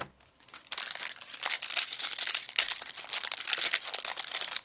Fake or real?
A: real